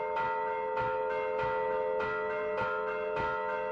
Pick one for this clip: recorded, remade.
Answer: recorded